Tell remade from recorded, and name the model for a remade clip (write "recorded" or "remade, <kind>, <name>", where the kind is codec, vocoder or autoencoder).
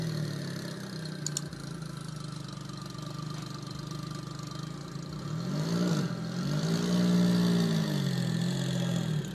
recorded